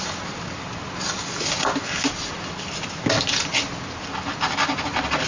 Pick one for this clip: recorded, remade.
recorded